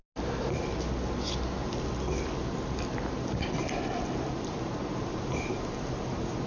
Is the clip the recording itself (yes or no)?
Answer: yes